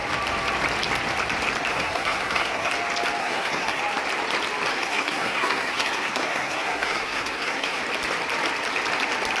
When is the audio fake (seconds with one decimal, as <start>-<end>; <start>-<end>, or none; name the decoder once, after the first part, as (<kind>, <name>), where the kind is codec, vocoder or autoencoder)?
1.7-2.7 (codec, SNAC); 3.2-3.8; 4.7-7.8